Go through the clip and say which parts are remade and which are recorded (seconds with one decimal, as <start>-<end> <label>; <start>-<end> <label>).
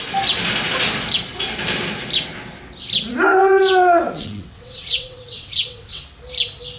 0.0-3.3 recorded; 3.3-6.0 remade; 6.0-6.8 recorded